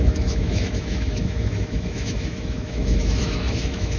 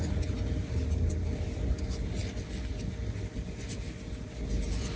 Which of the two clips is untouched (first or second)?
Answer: second